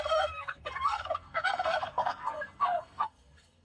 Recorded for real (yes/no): no